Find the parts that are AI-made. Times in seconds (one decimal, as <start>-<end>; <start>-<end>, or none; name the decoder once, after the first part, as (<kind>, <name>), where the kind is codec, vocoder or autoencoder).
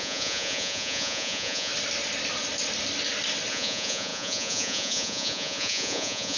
0.0-1.7 (vocoder, Vocos); 3.5-6.4